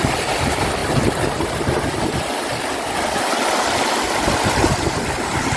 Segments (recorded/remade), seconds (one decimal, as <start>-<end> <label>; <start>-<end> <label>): 0.0-5.6 recorded